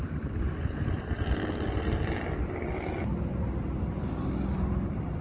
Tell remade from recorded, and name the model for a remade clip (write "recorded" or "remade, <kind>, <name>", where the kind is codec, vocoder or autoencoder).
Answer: recorded